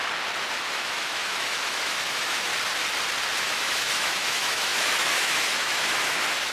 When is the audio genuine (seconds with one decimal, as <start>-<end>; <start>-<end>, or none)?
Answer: 0.0-0.7; 2.5-3.4

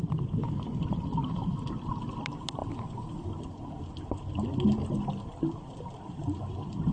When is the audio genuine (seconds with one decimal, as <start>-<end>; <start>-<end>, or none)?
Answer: 0.0-6.9

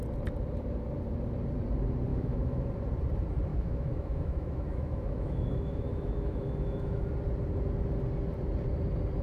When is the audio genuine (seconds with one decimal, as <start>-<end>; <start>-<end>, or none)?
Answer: 0.0-2.1; 2.7-3.5; 7.1-9.2